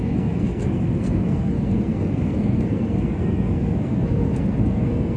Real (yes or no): no